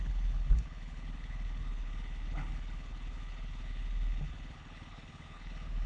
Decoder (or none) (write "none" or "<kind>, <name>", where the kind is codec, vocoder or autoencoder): codec, HILCodec